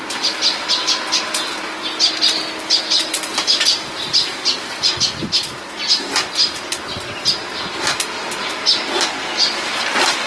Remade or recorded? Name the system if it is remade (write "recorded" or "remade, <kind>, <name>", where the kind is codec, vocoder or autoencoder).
recorded